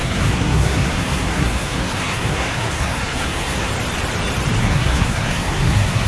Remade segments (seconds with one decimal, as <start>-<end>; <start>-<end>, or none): 0.0-3.7; 4.6-6.1

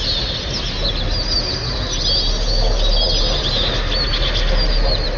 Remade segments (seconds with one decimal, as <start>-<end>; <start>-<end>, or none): none